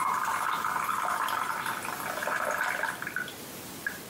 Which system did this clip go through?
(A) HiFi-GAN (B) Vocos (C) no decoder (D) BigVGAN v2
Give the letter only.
C